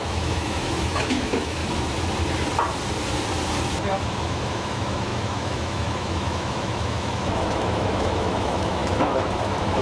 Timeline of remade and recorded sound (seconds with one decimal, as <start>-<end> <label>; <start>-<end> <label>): 0.0-1.6 remade; 1.6-4.0 recorded; 4.0-9.8 remade